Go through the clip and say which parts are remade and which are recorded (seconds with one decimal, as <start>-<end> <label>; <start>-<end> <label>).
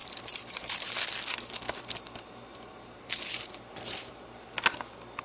0.0-0.9 remade; 0.9-2.5 recorded; 2.5-4.1 remade; 4.1-5.2 recorded